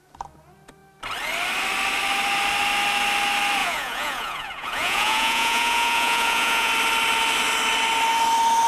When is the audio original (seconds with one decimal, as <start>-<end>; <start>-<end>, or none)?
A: 0.0-3.6; 6.7-8.7